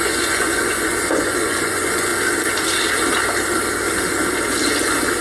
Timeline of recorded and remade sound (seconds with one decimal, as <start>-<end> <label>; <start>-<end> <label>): 0.0-2.1 remade; 2.1-5.2 recorded